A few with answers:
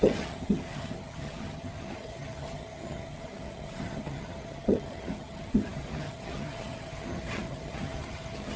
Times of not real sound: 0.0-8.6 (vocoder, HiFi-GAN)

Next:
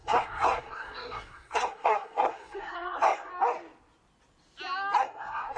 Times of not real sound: 0.0-3.3 (codec, SNAC); 5.0-5.6

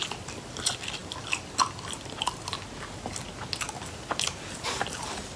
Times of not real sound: none